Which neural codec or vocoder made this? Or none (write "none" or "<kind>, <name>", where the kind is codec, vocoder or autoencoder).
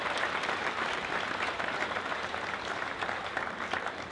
vocoder, BigVGAN v2